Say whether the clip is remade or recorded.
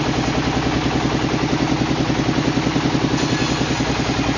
recorded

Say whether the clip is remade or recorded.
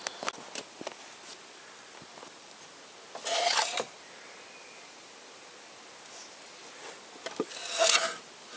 recorded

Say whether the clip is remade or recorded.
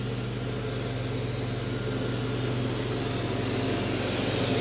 recorded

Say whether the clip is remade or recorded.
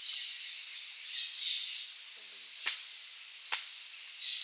recorded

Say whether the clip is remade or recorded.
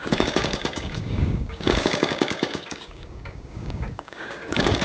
remade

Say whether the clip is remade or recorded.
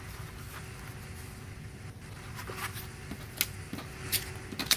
recorded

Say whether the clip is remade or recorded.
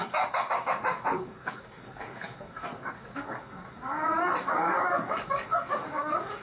remade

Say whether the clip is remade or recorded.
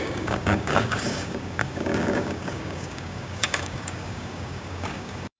remade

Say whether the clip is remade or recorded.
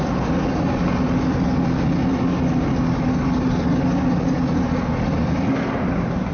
recorded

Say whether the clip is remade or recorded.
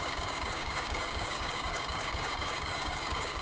remade